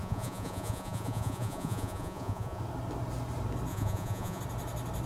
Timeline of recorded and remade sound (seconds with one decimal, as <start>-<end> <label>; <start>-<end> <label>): 0.0-2.6 remade; 2.6-3.7 recorded; 3.7-4.4 remade; 4.4-5.1 recorded